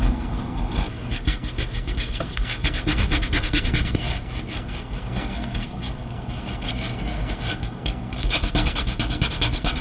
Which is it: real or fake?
fake